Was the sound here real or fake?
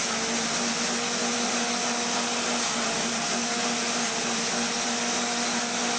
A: real